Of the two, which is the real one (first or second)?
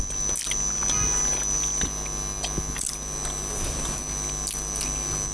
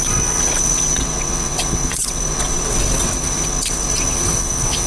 first